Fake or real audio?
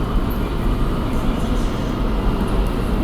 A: real